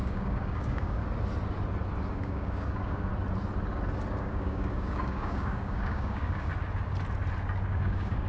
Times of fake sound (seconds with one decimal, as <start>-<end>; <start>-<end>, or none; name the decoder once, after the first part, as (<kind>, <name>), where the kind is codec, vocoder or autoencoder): 0.0-1.0 (codec, DAC); 2.1-3.1; 4.1-6.5; 7.7-8.3